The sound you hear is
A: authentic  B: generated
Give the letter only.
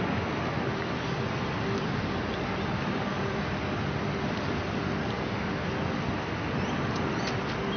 A